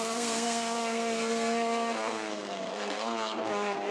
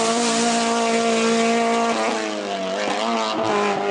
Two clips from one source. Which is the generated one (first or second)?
first